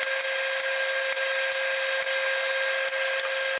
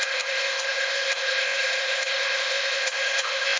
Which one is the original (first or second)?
first